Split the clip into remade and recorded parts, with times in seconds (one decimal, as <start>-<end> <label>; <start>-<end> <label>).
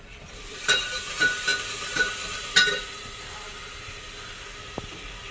0.0-5.3 recorded